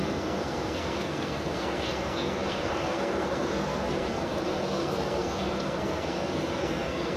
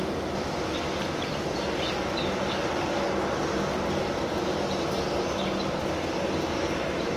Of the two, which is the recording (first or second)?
second